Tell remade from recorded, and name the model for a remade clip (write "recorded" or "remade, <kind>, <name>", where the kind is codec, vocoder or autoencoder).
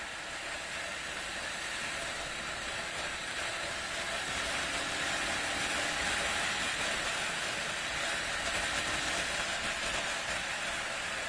recorded